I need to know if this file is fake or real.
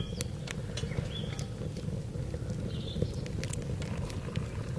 real